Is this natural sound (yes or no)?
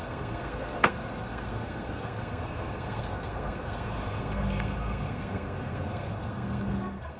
no